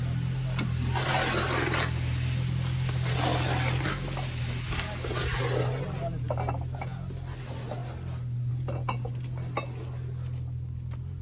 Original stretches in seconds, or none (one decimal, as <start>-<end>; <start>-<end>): 0.0-11.2